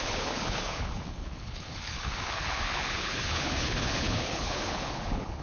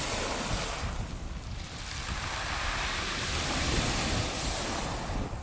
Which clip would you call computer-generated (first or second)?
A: first